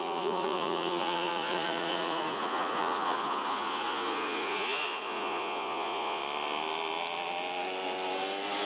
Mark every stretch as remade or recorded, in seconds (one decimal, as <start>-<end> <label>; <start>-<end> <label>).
0.0-6.2 remade; 6.2-8.7 recorded